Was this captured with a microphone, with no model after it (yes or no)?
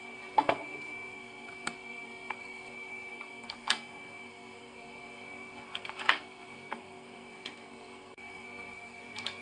no